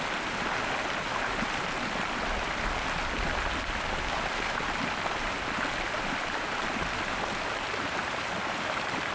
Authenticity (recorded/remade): recorded